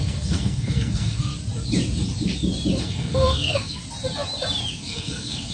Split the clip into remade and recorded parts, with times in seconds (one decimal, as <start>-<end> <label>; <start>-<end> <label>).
0.0-1.3 remade; 1.3-2.8 recorded; 2.8-3.8 remade; 3.8-4.7 recorded; 4.7-5.5 remade